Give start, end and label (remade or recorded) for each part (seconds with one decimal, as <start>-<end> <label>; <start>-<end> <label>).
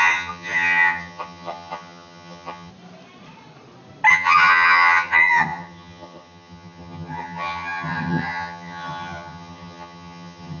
0.0-2.7 remade; 2.7-4.1 recorded; 4.1-10.6 remade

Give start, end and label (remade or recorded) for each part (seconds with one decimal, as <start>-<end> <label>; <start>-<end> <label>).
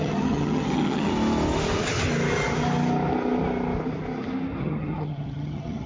0.0-1.1 remade; 1.1-4.6 recorded; 4.6-5.9 remade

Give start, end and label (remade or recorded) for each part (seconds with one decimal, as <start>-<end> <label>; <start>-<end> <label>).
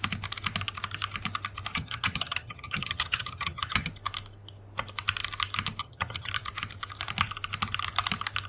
0.0-1.7 recorded; 1.7-3.9 remade; 3.9-5.8 recorded; 5.8-6.3 remade; 6.3-8.5 recorded